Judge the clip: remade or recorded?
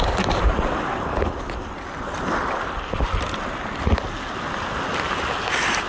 recorded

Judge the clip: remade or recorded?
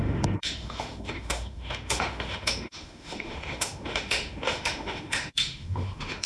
remade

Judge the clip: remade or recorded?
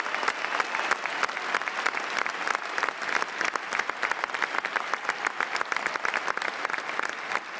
recorded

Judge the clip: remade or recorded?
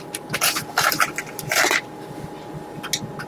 recorded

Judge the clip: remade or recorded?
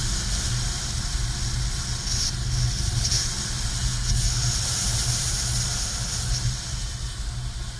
recorded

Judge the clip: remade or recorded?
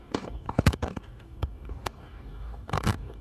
remade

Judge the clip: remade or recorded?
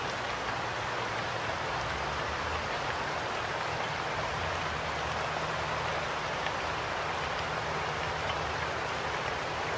recorded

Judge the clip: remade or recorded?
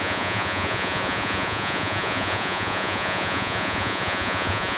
remade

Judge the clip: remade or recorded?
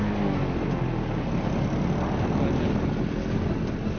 recorded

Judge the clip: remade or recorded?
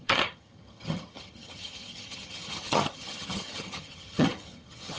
remade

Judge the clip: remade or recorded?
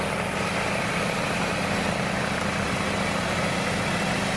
recorded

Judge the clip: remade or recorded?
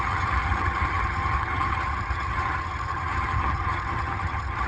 remade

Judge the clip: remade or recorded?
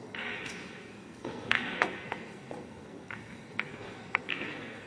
remade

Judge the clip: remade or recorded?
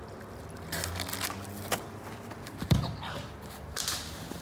recorded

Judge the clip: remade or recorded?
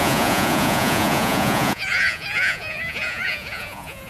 remade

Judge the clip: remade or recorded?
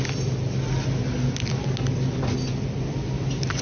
recorded